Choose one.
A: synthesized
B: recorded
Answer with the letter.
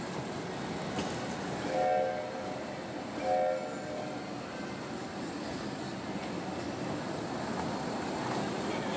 B